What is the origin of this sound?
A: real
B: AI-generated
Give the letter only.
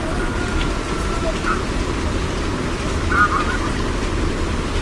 A